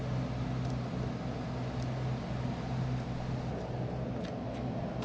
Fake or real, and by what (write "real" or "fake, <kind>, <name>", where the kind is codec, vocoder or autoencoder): real